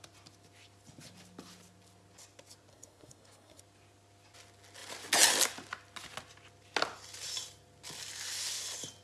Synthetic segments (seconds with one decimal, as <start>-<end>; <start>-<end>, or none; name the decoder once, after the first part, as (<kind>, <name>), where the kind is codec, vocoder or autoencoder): 2.7-3.6 (codec, SNAC)